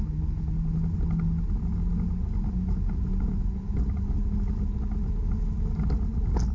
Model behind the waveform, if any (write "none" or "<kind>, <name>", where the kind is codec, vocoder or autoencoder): none